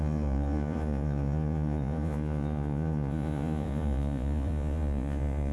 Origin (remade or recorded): remade